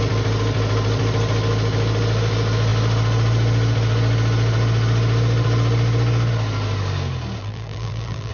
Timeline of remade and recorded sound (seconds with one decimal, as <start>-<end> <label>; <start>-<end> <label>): 0.0-7.4 recorded; 7.4-8.3 remade

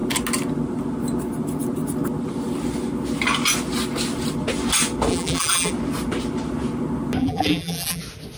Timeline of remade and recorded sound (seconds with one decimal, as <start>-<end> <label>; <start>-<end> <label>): 0.0-5.1 recorded; 5.1-5.7 remade; 5.7-7.2 recorded; 7.2-8.0 remade; 8.0-8.4 recorded

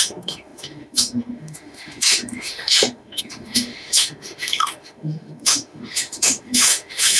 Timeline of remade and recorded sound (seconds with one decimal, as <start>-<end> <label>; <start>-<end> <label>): 0.0-7.2 remade